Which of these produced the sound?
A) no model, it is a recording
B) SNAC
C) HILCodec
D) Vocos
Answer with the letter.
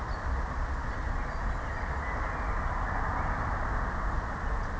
A